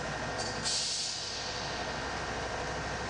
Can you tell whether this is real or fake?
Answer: real